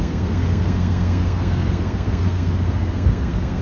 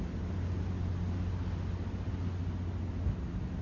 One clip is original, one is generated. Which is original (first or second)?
second